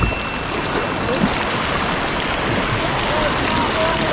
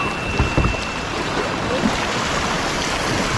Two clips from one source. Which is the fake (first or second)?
second